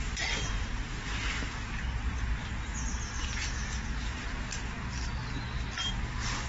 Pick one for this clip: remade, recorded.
recorded